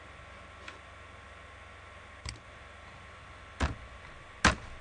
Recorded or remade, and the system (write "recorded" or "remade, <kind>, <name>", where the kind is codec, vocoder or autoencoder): recorded